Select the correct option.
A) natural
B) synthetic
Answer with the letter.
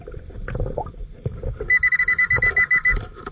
A